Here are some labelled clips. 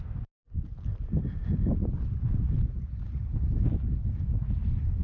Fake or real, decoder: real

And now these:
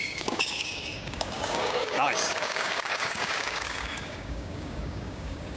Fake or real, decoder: fake, codec, DAC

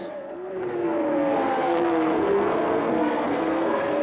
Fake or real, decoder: fake, codec, SNAC